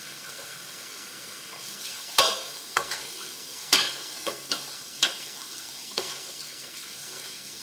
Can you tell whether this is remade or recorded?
remade